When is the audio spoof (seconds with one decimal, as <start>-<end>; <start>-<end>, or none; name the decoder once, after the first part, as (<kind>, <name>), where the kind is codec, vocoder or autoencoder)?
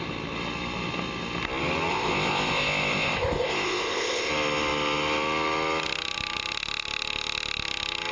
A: 1.9-4.3 (codec, ZipCodec)